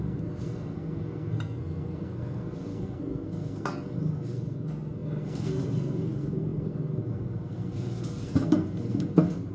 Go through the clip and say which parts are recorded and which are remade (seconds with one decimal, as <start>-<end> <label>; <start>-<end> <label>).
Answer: 0.0-9.5 remade